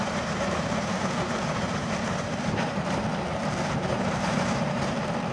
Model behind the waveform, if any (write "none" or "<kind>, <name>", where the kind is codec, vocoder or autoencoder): vocoder, BigVGAN v2